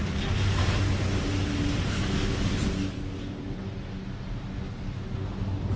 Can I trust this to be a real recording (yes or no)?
yes